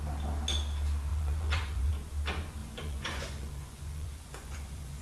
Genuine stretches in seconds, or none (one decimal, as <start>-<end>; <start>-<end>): 0.0-1.1; 1.9-2.6